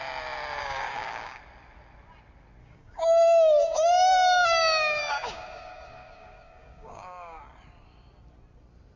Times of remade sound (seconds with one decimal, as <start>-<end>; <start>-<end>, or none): 0.6-1.4; 2.6-7.4